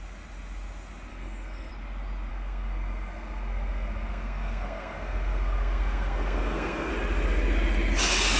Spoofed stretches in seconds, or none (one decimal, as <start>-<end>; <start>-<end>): 1.1-1.7; 2.3-6.9